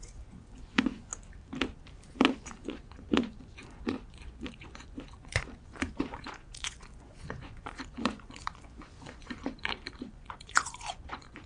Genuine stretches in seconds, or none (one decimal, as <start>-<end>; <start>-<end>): 1.1-2.3